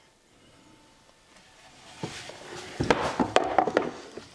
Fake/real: real